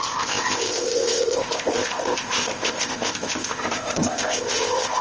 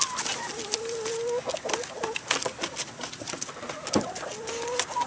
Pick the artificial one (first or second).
first